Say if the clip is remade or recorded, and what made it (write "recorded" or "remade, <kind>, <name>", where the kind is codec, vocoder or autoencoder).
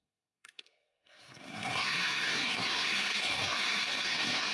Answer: remade, codec, SNAC